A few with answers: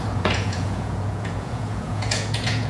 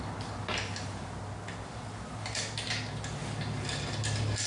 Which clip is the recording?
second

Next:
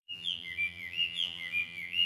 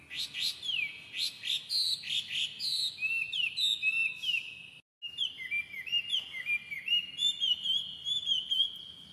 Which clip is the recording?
second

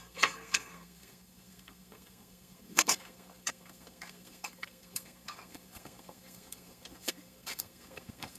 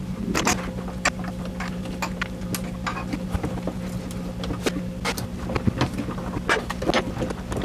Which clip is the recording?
second